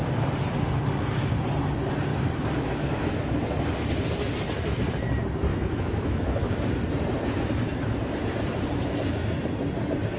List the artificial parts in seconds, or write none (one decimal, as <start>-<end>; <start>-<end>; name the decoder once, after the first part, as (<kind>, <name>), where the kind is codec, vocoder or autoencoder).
2.1-3.2 (autoencoder, DAC-VAE); 5.5-6.7